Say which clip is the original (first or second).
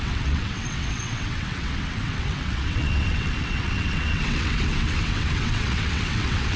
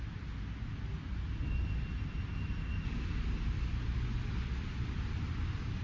second